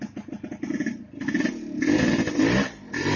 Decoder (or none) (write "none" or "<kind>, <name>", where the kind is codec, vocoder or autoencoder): none